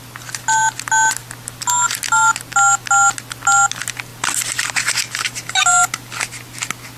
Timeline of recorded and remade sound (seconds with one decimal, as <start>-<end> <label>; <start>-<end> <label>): 0.0-7.0 recorded